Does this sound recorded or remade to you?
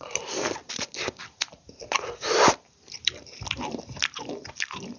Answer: remade